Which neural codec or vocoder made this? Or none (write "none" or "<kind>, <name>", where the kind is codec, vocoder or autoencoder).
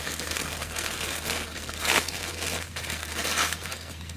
codec, SNAC